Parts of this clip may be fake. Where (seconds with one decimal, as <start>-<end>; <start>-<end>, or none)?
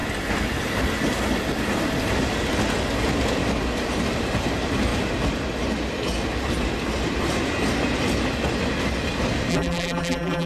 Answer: 9.5-10.5